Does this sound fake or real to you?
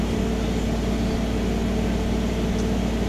real